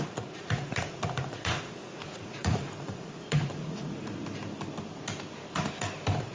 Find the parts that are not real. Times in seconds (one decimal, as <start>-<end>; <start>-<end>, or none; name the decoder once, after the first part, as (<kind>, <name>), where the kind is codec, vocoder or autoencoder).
0.0-4.2 (vocoder, Vocos)